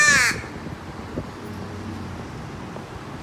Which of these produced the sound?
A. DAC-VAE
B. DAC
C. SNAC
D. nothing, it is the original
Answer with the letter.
D